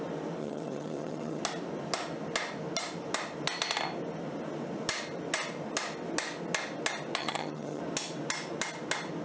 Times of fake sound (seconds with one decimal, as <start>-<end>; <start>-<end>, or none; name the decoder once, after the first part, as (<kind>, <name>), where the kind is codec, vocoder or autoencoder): 0.4-1.4 (vocoder, HiFi-GAN); 7.2-7.8